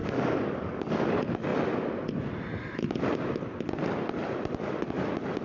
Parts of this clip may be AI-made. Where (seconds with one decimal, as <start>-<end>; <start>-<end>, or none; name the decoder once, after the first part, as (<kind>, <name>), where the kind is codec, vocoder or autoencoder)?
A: 0.0-1.1 (codec, DAC)